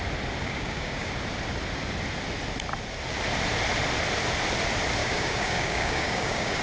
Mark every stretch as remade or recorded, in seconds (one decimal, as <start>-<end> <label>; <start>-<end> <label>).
0.0-0.4 recorded; 0.4-1.1 remade; 1.1-5.0 recorded; 5.0-6.6 remade